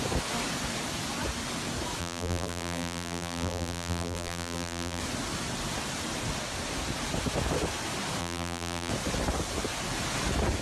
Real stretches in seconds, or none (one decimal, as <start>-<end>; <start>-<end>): 0.0-2.0; 5.0-8.2; 8.9-10.6